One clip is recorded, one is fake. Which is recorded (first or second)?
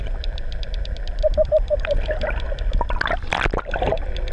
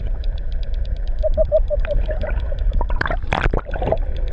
first